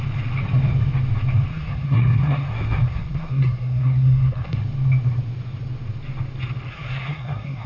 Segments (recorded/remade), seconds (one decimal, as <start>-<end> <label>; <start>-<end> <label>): 0.0-1.5 recorded; 1.5-4.6 remade; 4.6-6.7 recorded; 6.7-7.7 remade